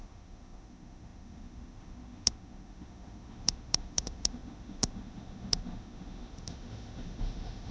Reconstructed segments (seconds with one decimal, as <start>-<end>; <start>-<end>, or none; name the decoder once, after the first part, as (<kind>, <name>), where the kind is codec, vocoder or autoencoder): 0.0-7.7 (autoencoder, DAC-VAE)